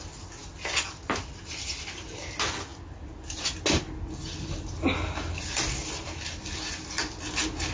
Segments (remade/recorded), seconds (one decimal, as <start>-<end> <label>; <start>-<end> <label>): 0.0-7.7 recorded